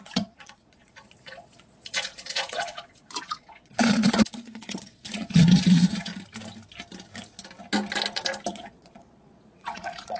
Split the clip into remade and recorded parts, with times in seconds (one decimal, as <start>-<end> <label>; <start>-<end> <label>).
0.0-6.1 remade; 6.1-8.5 recorded; 8.5-10.2 remade